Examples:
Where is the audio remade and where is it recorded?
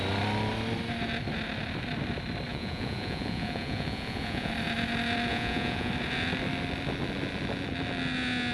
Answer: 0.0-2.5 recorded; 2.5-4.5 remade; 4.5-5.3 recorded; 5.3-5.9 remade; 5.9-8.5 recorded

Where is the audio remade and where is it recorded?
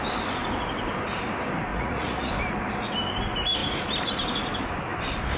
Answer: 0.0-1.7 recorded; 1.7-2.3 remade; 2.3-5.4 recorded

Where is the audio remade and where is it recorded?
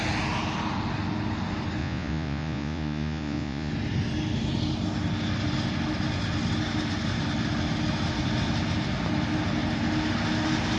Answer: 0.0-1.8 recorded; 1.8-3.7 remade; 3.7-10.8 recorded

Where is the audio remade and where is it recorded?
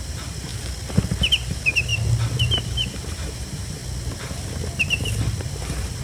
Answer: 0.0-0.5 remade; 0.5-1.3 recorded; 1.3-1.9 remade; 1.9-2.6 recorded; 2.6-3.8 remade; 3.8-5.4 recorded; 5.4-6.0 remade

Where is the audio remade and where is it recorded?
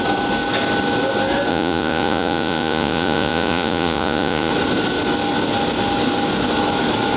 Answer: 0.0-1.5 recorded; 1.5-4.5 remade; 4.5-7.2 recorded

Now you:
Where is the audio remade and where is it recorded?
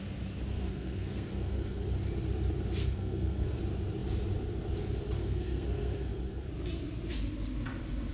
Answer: 0.0-0.5 recorded; 0.5-1.8 remade; 1.8-2.8 recorded; 2.8-3.6 remade; 3.6-5.2 recorded; 5.2-6.5 remade; 6.5-8.1 recorded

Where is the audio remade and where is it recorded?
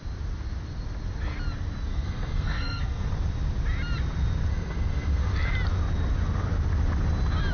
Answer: 0.0-1.9 recorded; 1.9-3.1 remade; 3.1-4.5 recorded; 4.5-5.3 remade; 5.3-7.5 recorded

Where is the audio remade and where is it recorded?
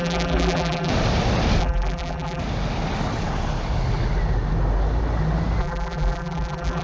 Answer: 0.0-0.9 remade; 0.9-1.6 recorded; 1.6-2.4 remade; 2.4-5.6 recorded; 5.6-6.8 remade